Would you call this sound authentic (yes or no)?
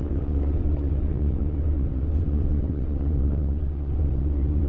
no